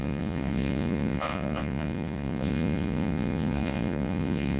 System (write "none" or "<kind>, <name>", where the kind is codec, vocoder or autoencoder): vocoder, Vocos